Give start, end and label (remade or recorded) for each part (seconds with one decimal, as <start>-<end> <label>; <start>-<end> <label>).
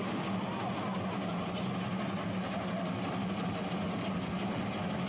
0.0-5.1 recorded